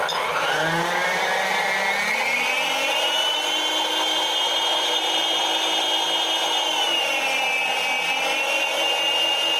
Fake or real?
real